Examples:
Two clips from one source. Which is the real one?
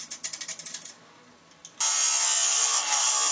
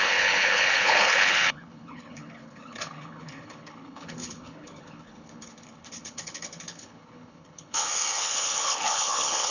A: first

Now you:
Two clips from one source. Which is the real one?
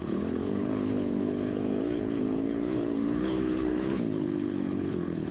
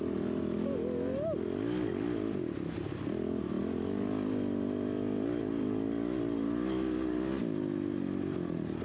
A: second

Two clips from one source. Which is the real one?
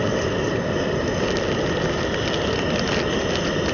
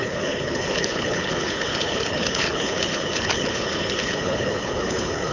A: first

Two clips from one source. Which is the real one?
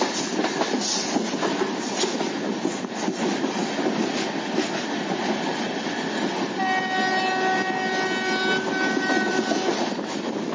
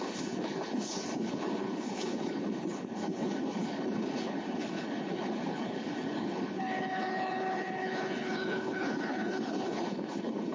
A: first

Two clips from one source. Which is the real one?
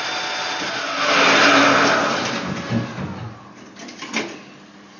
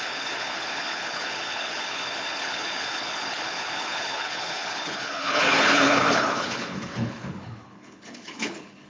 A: first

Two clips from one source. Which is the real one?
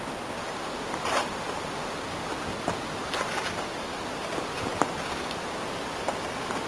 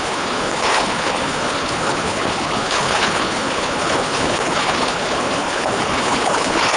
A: first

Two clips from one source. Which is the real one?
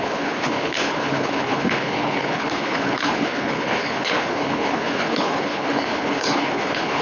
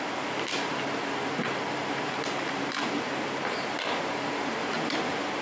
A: second